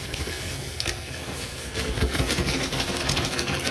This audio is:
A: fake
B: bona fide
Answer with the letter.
A